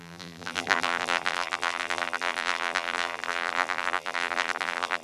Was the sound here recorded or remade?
remade